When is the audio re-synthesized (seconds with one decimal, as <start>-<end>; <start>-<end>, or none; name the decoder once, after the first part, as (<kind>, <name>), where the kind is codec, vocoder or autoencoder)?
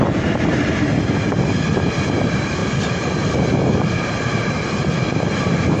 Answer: none